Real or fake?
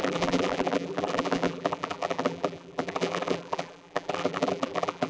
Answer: fake